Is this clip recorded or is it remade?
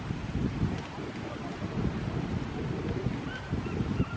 recorded